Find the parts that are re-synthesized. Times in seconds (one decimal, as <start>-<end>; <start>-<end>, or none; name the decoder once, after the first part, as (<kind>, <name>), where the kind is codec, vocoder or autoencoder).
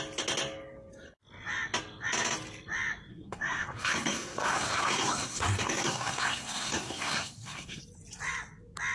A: 3.1-7.8 (codec, SNAC)